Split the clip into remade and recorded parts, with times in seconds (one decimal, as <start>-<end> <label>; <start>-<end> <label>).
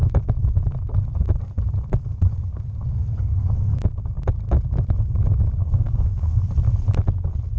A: 0.0-5.6 recorded; 5.6-6.4 remade; 6.4-7.6 recorded